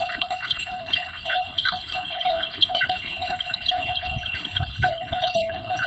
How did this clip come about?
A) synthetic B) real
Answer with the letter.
A